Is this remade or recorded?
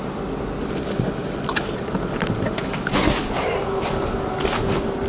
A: recorded